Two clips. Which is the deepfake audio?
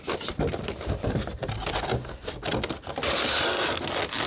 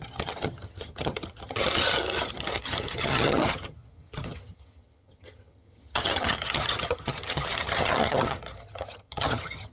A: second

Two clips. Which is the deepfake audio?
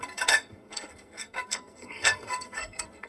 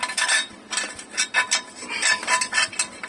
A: first